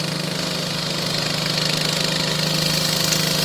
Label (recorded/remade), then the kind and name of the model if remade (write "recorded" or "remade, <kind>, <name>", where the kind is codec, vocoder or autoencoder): recorded